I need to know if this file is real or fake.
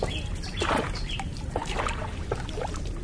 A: real